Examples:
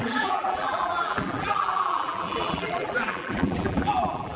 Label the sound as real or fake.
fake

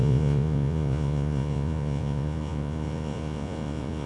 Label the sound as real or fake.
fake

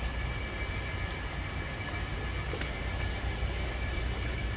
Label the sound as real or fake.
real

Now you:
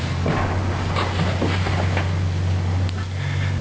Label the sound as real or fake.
real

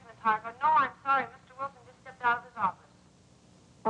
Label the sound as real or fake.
real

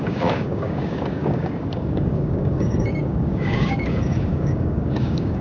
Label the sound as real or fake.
fake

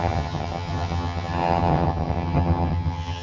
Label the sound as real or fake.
fake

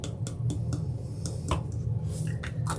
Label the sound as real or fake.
real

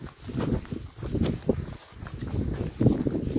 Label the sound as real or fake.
real